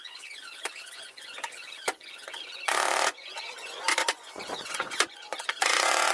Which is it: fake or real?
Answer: fake